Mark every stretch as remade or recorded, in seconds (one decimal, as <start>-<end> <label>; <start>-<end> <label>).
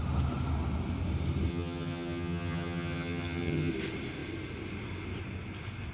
0.0-1.5 recorded; 1.5-3.7 remade; 3.7-5.9 recorded